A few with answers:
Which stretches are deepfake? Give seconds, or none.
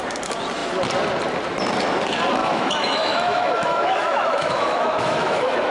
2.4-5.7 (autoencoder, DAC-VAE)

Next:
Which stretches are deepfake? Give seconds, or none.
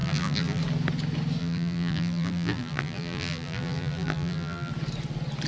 0.0-0.6 (vocoder, BigVGAN v2); 1.4-4.7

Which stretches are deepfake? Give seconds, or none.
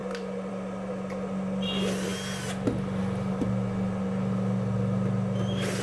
none